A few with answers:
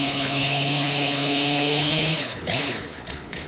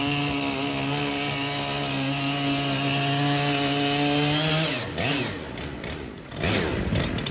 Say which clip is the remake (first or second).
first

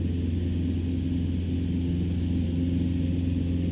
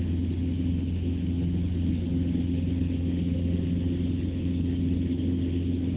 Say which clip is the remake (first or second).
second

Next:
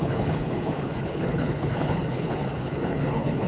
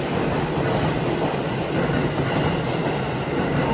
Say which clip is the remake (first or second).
first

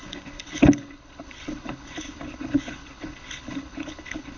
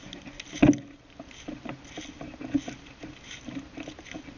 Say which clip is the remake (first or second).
first